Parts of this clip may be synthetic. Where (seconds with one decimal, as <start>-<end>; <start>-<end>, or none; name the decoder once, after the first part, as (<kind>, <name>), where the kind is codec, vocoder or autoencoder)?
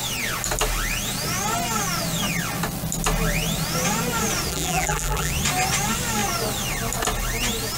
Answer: 4.5-5.3 (vocoder, BigVGAN v2)